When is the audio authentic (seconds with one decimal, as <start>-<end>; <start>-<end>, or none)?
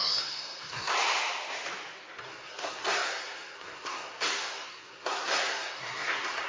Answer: 0.9-2.2